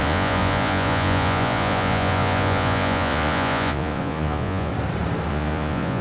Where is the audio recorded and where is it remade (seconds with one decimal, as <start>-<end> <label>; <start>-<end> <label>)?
0.0-4.7 remade; 4.7-5.3 recorded; 5.3-6.0 remade